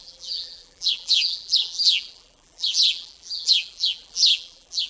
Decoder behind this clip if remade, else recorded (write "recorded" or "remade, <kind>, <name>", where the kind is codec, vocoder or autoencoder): remade, vocoder, BigVGAN v2